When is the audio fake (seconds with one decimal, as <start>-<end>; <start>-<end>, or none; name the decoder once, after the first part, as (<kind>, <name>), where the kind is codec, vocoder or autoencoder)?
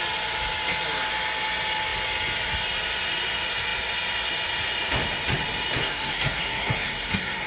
5.8-7.5 (codec, SNAC)